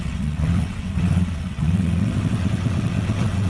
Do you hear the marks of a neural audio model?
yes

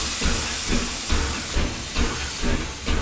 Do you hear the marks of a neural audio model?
no